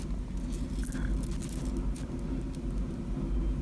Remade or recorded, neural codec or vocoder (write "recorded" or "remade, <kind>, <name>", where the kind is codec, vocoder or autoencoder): recorded